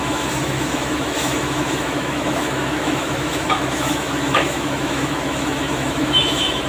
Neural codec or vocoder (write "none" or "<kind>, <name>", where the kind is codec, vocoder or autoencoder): autoencoder, DAC-VAE